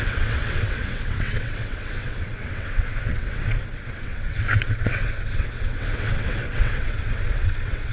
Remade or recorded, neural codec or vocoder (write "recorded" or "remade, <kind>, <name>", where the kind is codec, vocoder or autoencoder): remade, vocoder, WaveNeXt